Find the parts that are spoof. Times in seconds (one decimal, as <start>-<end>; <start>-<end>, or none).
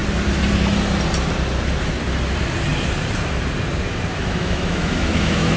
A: 4.1-5.6